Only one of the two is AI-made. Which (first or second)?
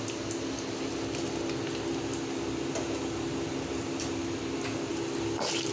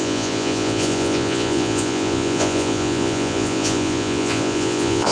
second